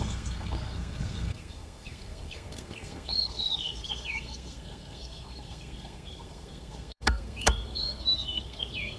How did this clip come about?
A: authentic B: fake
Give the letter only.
B